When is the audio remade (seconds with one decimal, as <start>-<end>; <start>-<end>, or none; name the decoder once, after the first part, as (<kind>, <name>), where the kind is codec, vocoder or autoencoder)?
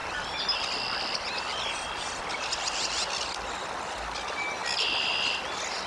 none